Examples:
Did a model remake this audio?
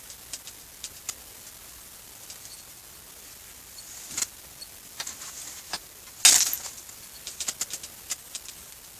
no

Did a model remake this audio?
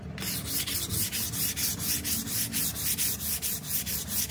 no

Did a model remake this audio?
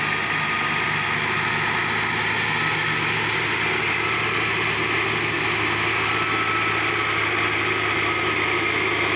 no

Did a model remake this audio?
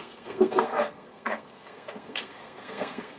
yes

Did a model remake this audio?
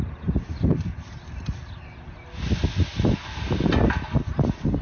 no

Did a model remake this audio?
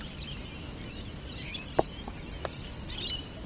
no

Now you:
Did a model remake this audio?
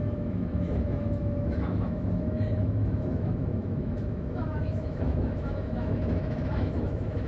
yes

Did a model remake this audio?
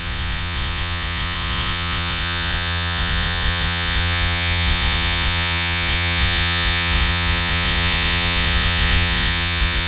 yes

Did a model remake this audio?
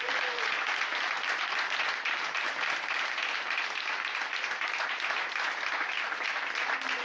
no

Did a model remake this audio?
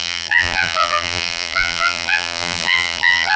yes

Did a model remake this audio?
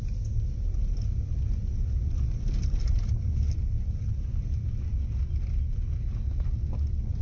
no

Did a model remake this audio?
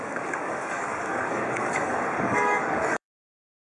yes